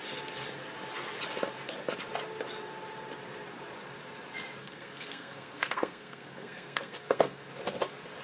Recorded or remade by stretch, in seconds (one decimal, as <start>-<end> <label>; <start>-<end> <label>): 0.0-4.6 recorded; 4.6-7.5 remade; 7.5-8.2 recorded